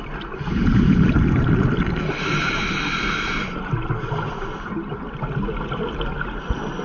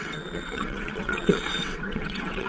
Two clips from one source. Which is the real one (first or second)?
first